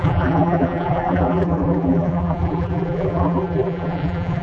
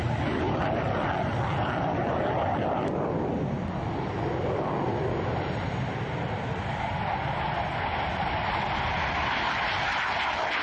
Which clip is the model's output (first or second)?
first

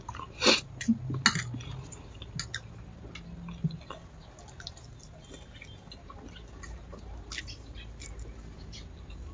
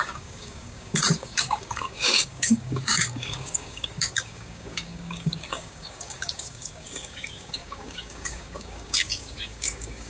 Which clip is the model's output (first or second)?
second